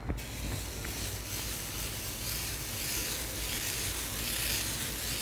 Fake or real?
real